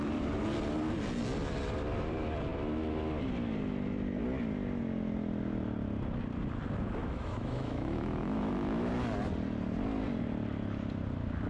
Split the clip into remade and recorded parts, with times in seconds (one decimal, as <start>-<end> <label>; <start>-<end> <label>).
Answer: 0.0-7.0 recorded; 7.0-8.9 remade; 8.9-11.5 recorded